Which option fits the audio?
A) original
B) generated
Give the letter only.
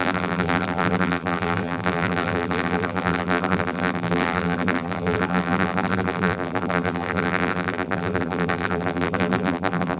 B